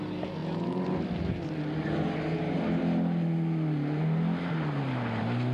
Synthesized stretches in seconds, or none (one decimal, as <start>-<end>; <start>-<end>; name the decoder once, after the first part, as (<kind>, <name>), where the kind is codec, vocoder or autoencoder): none